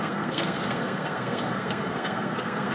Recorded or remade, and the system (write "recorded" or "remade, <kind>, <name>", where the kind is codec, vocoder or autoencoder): remade, codec, SNAC